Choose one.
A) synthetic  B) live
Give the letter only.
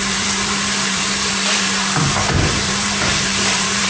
A